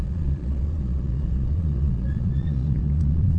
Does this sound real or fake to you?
fake